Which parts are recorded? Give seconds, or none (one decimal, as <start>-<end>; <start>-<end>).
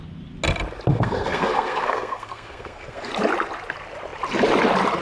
0.0-0.9; 3.1-5.0